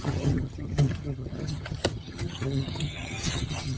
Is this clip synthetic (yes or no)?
yes